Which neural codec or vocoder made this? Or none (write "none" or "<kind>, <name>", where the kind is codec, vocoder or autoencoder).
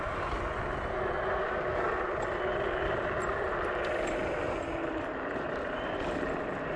none